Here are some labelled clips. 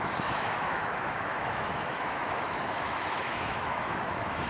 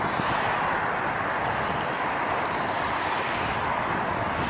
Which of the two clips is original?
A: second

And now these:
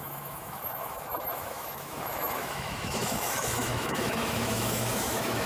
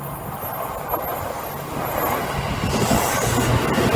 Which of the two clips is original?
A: second